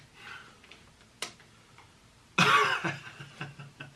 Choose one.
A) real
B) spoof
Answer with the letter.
A